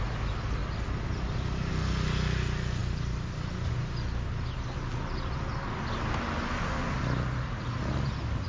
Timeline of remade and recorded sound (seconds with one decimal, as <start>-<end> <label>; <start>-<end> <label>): 0.0-8.5 recorded